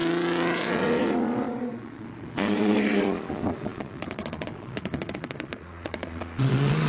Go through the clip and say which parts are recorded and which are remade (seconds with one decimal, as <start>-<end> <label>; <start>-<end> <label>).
0.0-6.9 remade